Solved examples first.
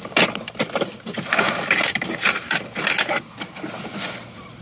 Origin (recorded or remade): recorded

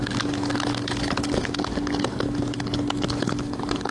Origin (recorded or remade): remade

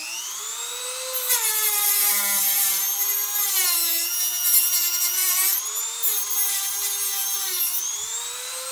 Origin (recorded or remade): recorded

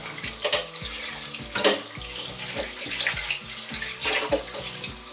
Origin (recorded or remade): recorded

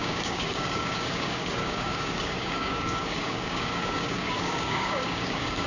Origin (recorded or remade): remade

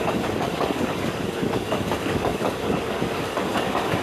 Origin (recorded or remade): remade